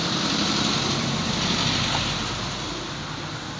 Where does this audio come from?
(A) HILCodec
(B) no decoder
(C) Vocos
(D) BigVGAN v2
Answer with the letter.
B